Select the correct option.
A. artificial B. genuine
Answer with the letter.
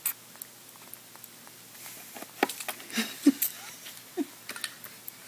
B